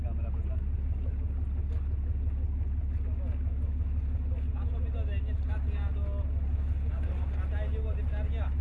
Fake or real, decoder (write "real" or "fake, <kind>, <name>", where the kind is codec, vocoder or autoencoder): real